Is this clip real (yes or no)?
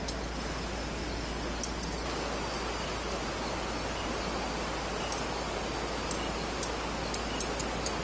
yes